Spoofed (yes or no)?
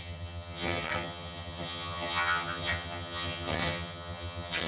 yes